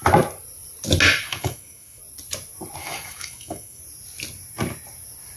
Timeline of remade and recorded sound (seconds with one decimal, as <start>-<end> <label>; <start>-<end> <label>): 0.0-1.3 recorded; 1.3-2.0 remade; 2.0-2.8 recorded; 2.8-3.8 remade; 3.8-5.4 recorded

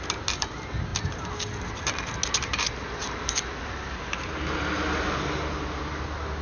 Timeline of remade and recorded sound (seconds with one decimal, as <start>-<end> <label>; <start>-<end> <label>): 0.0-2.4 recorded; 2.4-3.3 remade; 3.3-6.4 recorded

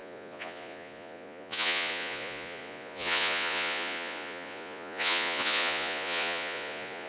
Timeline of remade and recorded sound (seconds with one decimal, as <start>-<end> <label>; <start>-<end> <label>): 0.0-7.1 remade

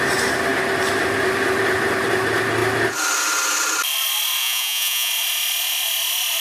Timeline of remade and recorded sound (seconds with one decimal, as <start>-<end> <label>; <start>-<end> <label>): 0.0-4.4 recorded; 4.4-5.1 remade; 5.1-6.4 recorded

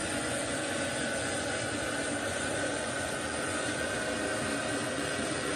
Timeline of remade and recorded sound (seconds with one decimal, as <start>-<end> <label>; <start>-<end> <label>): 0.0-1.8 remade; 1.8-2.3 recorded; 2.3-3.9 remade; 3.9-4.9 recorded; 4.9-5.6 remade

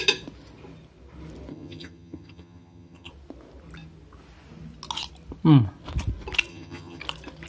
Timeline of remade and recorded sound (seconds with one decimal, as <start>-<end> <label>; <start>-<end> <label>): 0.0-1.5 recorded; 1.5-3.1 remade; 3.1-6.5 recorded; 6.5-7.0 remade; 7.0-7.5 recorded

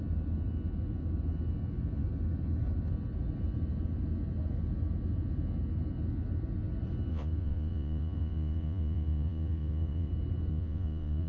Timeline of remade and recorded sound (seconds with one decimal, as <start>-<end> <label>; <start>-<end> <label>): 0.0-7.1 recorded; 7.1-10.1 remade; 10.1-10.5 recorded; 10.5-11.3 remade

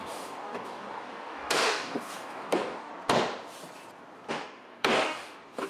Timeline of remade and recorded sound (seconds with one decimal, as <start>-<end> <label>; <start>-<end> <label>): 0.0-2.9 remade; 2.9-4.3 recorded; 4.3-5.7 remade